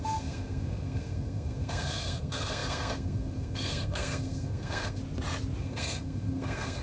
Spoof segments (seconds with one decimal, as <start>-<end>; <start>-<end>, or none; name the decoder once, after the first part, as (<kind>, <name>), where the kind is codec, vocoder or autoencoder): 0.0-5.0 (codec, SNAC); 5.6-6.8